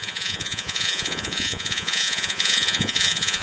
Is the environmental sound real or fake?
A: fake